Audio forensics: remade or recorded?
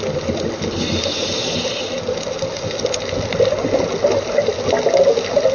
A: recorded